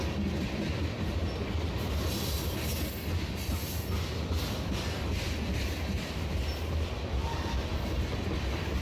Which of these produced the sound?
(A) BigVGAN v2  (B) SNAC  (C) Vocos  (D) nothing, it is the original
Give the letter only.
D